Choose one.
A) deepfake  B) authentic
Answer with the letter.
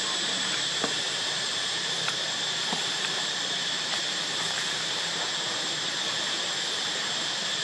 A